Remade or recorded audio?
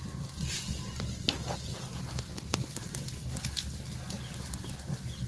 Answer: recorded